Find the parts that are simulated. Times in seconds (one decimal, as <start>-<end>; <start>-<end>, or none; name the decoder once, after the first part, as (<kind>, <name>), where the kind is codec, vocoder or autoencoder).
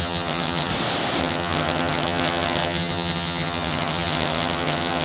0.0-0.7 (vocoder, HiFi-GAN); 1.2-5.0